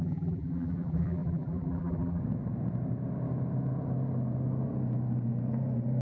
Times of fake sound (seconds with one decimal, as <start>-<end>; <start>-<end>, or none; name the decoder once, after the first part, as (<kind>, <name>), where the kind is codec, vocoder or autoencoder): 0.0-2.2 (vocoder, BigVGAN v2)